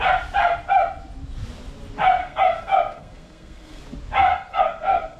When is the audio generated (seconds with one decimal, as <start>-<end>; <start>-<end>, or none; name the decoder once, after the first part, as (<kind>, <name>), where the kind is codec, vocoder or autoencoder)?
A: 2.2-3.8 (codec, SNAC); 4.3-5.2